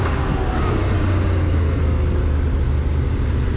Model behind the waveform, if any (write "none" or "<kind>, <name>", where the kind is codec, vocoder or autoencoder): none